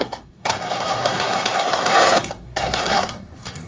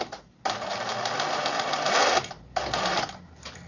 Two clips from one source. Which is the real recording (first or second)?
second